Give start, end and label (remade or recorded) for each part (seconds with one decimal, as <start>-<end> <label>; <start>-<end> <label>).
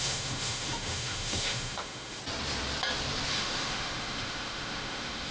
0.0-2.2 remade; 2.2-3.3 recorded; 3.3-5.3 remade